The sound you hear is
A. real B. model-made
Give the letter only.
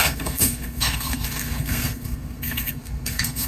B